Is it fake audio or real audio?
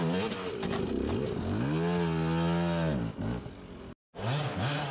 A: real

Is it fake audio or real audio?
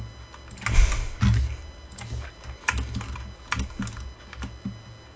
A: real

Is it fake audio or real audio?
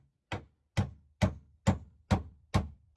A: real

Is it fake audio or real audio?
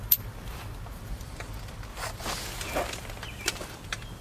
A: fake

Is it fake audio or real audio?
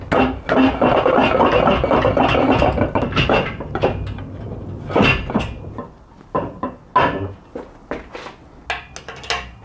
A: real